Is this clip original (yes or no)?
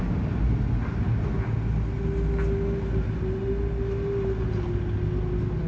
yes